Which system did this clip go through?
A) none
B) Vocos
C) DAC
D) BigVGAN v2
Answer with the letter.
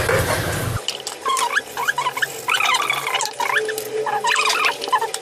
A